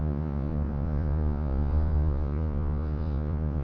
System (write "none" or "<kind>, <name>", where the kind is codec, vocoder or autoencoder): vocoder, Vocos